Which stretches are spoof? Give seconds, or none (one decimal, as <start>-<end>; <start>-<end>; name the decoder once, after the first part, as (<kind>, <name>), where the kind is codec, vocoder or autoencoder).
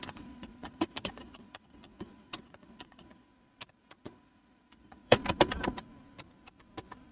0.0-3.3 (vocoder, Vocos); 3.8-5.2